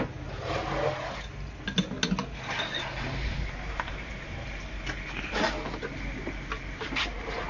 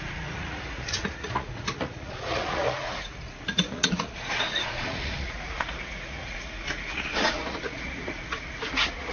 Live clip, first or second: first